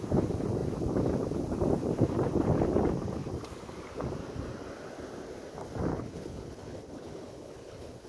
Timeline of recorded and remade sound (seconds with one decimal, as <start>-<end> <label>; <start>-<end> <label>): 0.0-5.9 recorded; 5.9-8.1 remade